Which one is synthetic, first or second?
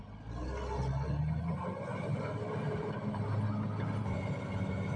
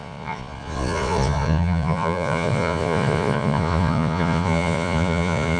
second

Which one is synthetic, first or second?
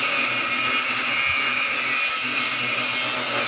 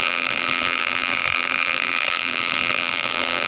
second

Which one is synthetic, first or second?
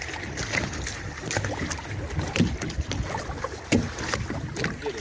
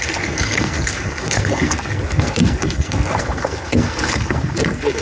second